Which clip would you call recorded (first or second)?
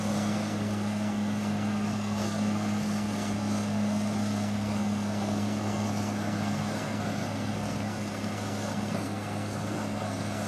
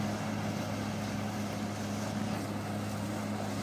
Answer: second